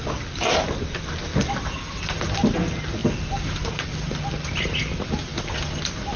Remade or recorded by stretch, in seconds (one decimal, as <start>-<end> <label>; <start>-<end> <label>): 0.0-5.3 recorded; 5.3-6.2 remade